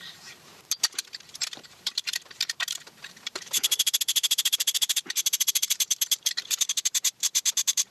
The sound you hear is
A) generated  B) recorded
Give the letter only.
A